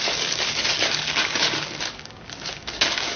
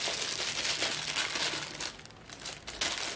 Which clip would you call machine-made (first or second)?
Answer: first